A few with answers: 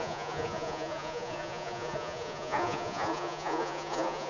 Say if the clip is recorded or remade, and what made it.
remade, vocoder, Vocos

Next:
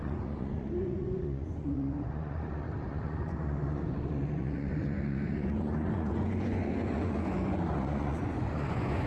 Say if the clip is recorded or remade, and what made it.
remade, vocoder, Vocos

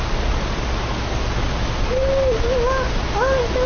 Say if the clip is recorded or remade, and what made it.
recorded